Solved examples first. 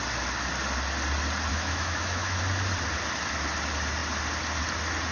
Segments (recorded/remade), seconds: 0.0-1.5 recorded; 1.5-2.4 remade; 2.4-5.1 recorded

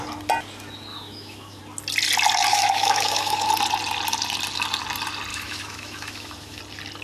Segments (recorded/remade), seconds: 0.0-0.9 recorded; 0.9-1.6 remade; 1.6-2.5 recorded; 2.5-3.5 remade; 3.5-5.3 recorded; 5.3-6.6 remade; 6.6-7.0 recorded

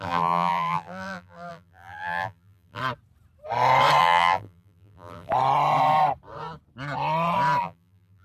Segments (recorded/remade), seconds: 0.0-2.8 remade; 2.8-4.0 recorded; 4.0-5.3 remade; 5.3-7.6 recorded; 7.6-8.2 remade